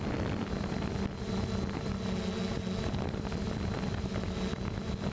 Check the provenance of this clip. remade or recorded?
recorded